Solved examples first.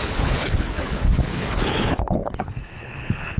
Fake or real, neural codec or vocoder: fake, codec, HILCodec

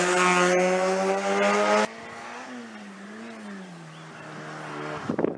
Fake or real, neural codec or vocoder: real